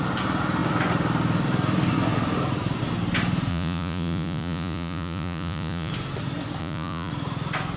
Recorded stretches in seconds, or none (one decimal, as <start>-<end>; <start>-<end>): 0.0-3.5; 5.9-6.6; 7.1-7.8